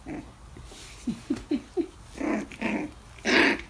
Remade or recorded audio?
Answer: recorded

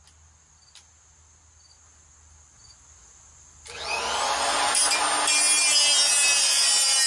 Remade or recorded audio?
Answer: recorded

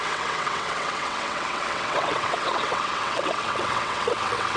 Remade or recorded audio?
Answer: remade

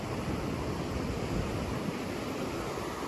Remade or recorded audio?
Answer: recorded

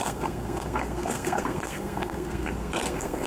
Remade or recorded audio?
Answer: remade